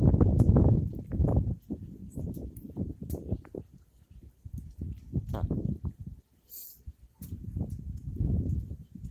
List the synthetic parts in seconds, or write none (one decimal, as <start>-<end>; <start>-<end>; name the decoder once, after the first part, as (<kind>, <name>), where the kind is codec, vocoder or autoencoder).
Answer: 7.1-9.1 (vocoder, Vocos)